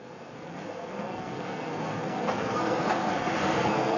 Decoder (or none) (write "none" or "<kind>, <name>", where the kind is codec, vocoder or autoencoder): codec, SNAC